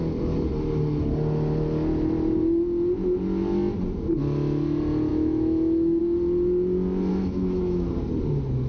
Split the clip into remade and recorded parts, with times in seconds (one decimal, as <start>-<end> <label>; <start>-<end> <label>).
0.0-5.1 recorded; 5.1-6.0 remade; 6.0-7.1 recorded; 7.1-7.9 remade; 7.9-8.7 recorded